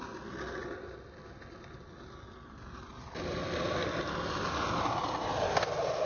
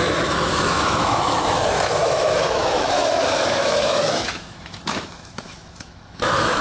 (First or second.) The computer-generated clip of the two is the second